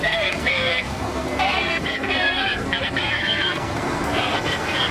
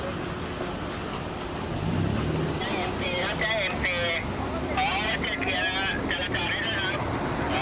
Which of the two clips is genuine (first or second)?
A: second